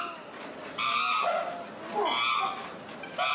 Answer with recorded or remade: recorded